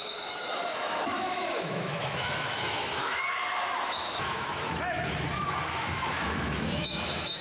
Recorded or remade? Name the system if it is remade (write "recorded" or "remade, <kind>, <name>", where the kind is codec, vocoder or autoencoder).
remade, autoencoder, DAC-VAE